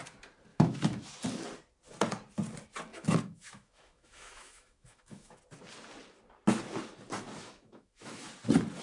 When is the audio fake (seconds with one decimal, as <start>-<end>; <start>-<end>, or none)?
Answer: 0.5-1.1; 2.9-5.4; 7.4-8.3